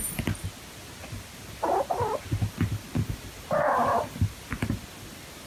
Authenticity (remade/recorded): recorded